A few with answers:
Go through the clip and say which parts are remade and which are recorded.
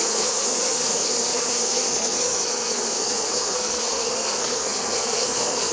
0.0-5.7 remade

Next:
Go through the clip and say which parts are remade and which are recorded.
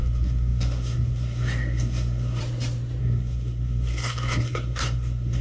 0.0-2.4 remade; 2.4-3.0 recorded; 3.0-5.4 remade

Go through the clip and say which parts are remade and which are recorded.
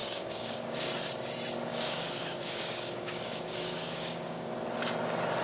0.0-0.9 remade; 0.9-1.7 recorded; 1.7-4.5 remade; 4.5-5.4 recorded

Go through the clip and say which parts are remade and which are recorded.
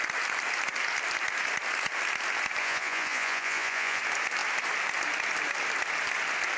0.0-2.6 recorded; 2.6-4.0 remade; 4.0-6.6 recorded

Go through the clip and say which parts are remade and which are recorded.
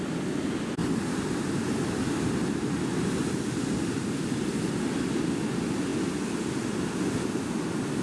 0.0-0.8 recorded; 0.8-4.6 remade; 4.6-8.0 recorded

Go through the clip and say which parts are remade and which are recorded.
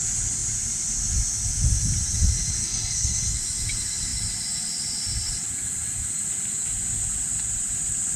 0.0-2.6 recorded; 2.6-3.2 remade; 3.2-8.2 recorded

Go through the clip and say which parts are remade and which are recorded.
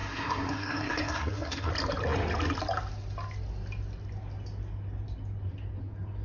0.0-1.7 remade; 1.7-6.2 recorded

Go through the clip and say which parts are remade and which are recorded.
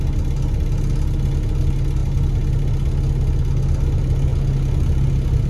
0.0-5.5 recorded